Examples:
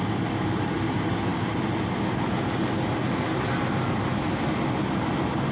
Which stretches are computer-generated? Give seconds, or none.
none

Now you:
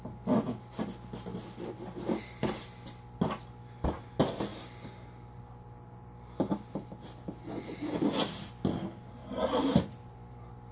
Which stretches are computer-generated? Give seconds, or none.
9.2-10.7 (vocoder, BigVGAN v2)

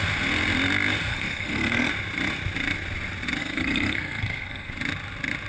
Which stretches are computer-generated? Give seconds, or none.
1.1-1.9 (codec, SNAC); 3.4-4.7

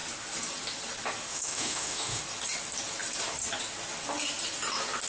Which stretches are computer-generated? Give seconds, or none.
1.3-2.2 (autoencoder, DAC-VAE)

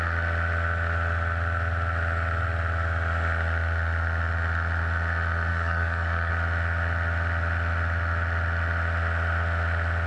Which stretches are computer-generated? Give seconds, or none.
5.5-6.3 (codec, DAC)